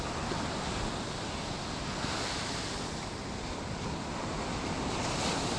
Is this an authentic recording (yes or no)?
yes